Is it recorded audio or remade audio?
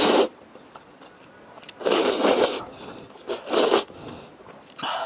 recorded